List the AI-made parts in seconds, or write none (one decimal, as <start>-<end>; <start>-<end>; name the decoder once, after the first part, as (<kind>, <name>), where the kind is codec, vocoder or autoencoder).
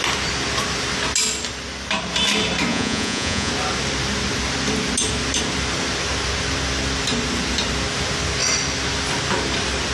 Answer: 2.7-3.5 (vocoder, Vocos)